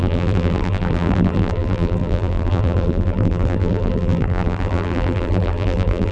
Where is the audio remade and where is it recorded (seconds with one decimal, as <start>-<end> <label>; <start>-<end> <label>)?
0.0-6.1 remade